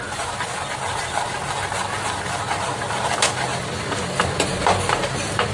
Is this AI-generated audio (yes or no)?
no